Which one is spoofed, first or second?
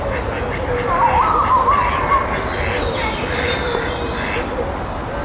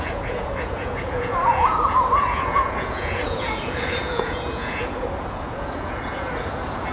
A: second